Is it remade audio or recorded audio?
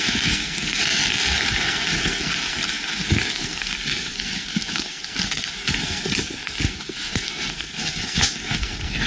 remade